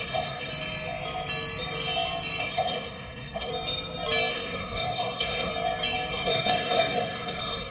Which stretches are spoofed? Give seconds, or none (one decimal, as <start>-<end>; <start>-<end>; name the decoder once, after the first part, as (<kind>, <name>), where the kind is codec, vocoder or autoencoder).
0.0-0.5 (codec, SNAC); 2.4-3.5; 4.3-5.5; 6.1-7.7

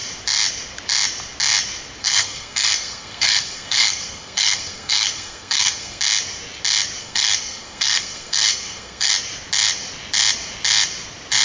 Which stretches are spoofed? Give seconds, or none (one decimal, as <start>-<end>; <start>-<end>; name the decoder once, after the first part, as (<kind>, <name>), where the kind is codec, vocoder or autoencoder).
2.0-6.0 (codec, SNAC); 7.0-9.1

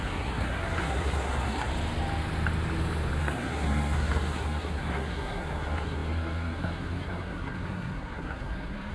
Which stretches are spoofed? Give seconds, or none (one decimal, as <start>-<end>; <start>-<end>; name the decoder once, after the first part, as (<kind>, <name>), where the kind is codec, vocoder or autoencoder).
0.0-1.7 (codec, SNAC); 3.2-8.9

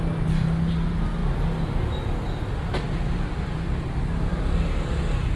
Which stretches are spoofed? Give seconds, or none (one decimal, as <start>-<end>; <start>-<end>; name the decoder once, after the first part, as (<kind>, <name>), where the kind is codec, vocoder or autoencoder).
none

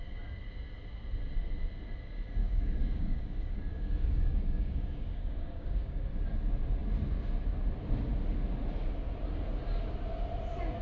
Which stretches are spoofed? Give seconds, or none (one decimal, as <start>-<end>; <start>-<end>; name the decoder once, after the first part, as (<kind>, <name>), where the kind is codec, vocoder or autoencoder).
2.4-6.1 (codec, DAC)

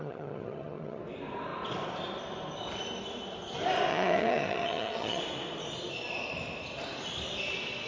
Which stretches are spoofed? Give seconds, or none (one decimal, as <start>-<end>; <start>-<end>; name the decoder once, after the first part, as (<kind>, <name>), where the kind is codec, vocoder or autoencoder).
0.0-1.0 (vocoder, HiFi-GAN); 3.9-5.2

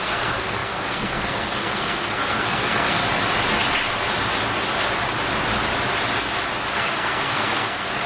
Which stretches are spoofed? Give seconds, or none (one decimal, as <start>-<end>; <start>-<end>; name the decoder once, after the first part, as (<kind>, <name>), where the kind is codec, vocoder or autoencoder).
0.0-3.0 (codec, SNAC); 6.7-8.1